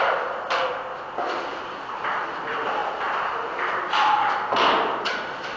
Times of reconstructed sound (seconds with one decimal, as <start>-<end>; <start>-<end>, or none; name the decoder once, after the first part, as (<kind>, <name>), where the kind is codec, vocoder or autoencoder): none